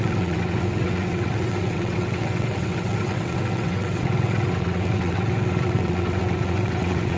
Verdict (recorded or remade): remade